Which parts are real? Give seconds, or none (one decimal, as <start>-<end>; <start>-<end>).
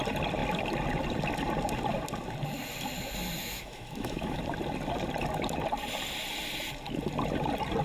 0.0-3.4; 4.4-7.8